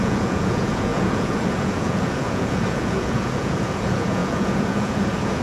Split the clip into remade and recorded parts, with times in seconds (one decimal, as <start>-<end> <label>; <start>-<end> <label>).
0.0-5.4 remade